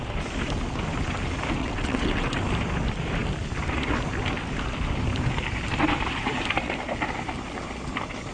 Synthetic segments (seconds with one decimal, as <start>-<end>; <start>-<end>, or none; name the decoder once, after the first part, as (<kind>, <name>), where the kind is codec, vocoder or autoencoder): 1.6-2.4 (vocoder, WaveNeXt)